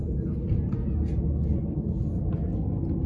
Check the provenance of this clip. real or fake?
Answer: real